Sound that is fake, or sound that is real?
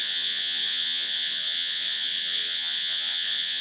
fake